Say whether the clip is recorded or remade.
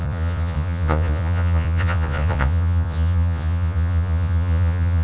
remade